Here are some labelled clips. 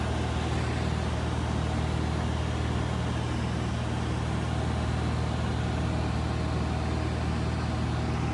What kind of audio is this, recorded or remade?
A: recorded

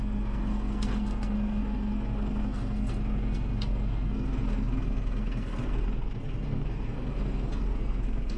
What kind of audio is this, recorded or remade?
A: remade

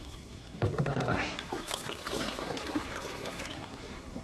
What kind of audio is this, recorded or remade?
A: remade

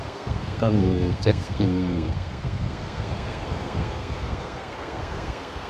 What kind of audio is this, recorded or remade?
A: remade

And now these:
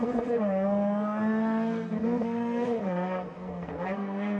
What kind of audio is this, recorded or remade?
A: remade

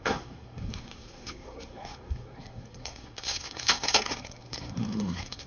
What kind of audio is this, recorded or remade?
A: remade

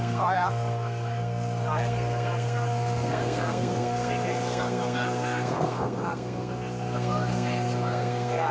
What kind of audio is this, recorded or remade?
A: remade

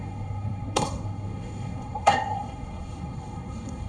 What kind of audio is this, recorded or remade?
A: remade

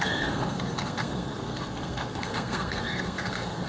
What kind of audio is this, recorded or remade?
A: remade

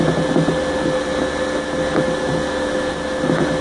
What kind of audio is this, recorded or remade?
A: recorded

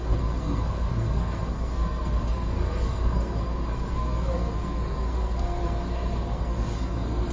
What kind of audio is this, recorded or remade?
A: remade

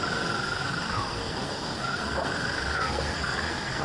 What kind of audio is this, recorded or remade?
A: remade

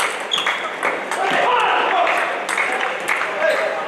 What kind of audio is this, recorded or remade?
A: recorded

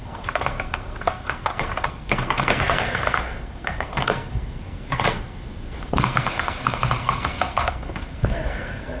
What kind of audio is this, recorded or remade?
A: remade